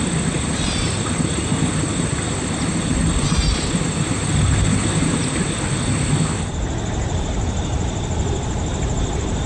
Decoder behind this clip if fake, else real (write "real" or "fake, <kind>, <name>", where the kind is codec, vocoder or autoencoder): real